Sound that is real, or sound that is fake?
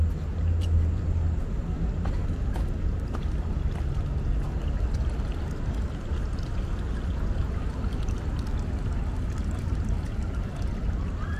real